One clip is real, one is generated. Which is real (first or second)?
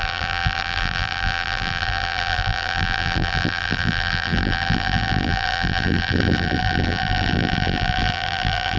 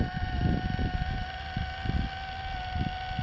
second